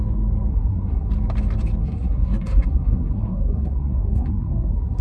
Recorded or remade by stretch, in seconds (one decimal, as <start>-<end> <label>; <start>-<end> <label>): 0.0-0.5 recorded; 0.5-1.1 remade; 1.1-1.8 recorded; 1.8-5.0 remade